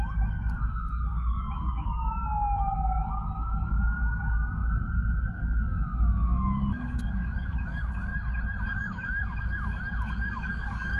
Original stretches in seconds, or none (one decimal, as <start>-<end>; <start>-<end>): 4.6-5.3; 8.1-8.6